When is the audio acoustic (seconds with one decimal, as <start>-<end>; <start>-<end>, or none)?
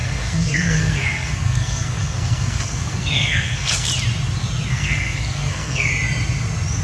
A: 3.9-4.7; 5.9-6.8